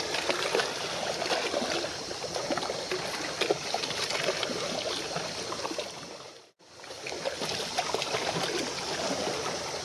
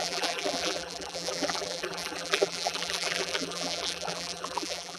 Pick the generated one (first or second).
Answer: second